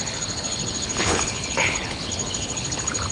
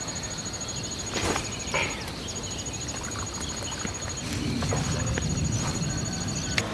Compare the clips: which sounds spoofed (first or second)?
first